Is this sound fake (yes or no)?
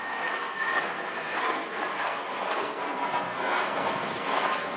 yes